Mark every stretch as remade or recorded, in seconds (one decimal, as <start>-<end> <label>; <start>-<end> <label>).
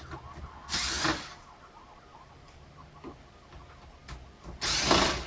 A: 0.0-5.3 recorded